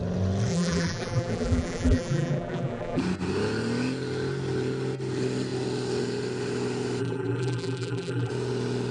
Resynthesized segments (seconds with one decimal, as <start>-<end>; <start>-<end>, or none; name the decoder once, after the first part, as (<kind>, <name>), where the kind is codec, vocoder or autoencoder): 0.5-3.0 (vocoder, BigVGAN v2); 7.0-8.3

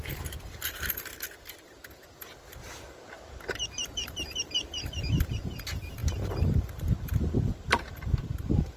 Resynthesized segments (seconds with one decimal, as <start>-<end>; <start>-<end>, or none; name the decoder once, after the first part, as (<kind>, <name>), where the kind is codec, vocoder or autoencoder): 0.0-2.6 (vocoder, BigVGAN v2); 3.5-8.8